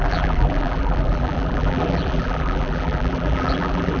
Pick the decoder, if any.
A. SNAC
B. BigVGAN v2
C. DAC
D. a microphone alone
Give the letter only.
B